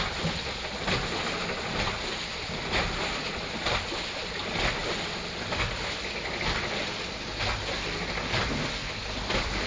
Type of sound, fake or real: real